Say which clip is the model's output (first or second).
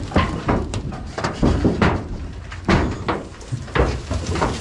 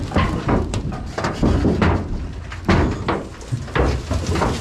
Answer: first